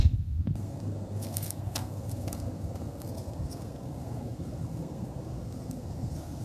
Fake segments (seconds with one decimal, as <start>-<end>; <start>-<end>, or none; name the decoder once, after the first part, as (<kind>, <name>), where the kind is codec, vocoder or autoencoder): 0.0-6.4 (codec, SNAC)